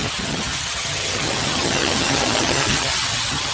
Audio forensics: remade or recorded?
remade